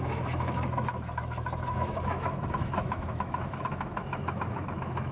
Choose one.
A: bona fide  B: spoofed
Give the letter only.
B